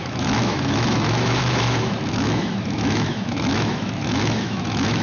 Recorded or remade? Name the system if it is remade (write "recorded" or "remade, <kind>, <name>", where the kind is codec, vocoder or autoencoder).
remade, autoencoder, DAC-VAE